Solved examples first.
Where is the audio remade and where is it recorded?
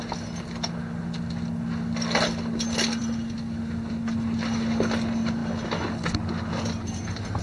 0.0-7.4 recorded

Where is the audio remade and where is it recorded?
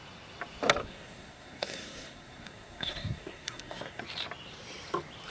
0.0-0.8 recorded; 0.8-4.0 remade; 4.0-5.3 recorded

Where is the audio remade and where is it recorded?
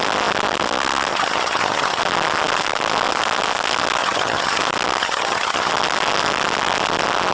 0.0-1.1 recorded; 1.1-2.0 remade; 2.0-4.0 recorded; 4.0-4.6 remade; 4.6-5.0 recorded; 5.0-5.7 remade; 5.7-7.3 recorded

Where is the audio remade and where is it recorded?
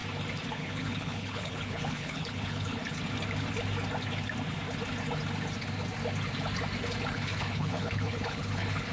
0.0-0.5 recorded; 0.5-2.8 remade; 2.8-7.1 recorded; 7.1-8.9 remade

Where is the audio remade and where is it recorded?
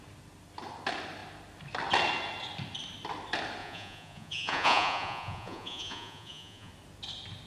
0.0-3.6 recorded; 3.6-6.7 remade; 6.7-7.5 recorded